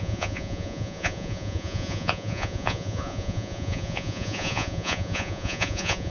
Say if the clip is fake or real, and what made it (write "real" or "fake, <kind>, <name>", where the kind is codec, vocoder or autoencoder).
fake, vocoder, Vocos